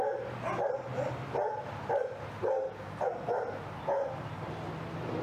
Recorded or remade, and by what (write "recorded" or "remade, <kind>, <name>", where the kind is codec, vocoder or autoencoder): recorded